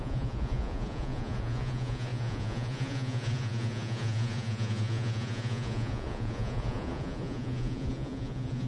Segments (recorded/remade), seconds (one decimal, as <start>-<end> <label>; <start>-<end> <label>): 0.0-8.7 remade